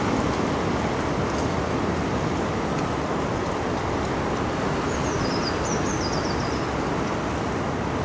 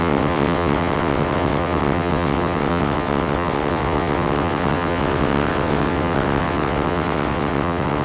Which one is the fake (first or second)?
second